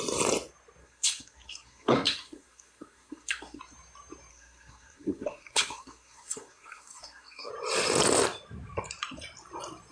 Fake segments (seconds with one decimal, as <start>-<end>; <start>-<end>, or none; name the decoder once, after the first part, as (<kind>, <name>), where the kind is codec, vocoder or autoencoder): 0.8-3.6 (codec, SNAC); 4.3-7.5